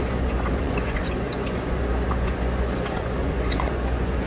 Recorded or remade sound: remade